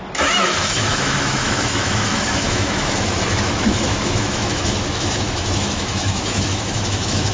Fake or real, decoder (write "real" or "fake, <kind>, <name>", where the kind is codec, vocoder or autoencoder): fake, autoencoder, DAC-VAE